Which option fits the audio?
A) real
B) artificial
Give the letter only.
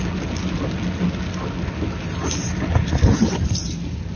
A